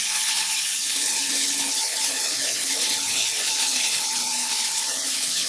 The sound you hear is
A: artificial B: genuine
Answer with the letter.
A